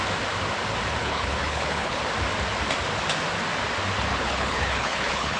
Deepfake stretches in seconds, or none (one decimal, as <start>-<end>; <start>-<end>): 1.0-2.0; 4.1-5.4